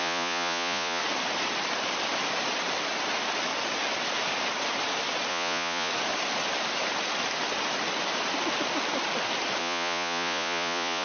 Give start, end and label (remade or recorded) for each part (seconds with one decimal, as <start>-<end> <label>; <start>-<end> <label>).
0.0-1.0 remade; 1.0-5.3 recorded; 5.3-5.9 remade; 5.9-9.6 recorded; 9.6-11.0 remade

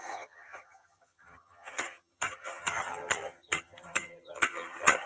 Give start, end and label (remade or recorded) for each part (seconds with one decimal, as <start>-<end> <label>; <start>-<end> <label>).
0.0-5.1 remade

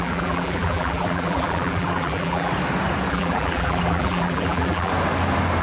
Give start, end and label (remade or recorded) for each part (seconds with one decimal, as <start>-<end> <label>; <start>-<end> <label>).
0.0-2.5 remade; 2.5-3.1 recorded; 3.1-4.9 remade; 4.9-5.6 recorded

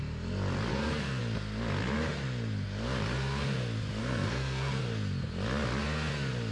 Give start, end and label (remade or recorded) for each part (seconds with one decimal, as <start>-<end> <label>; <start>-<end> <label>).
0.0-0.7 recorded; 0.7-1.2 remade; 1.2-4.0 recorded; 4.0-4.8 remade; 4.8-6.5 recorded